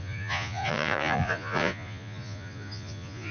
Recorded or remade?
remade